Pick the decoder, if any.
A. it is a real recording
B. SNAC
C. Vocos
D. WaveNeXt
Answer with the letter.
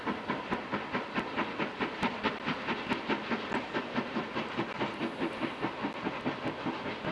A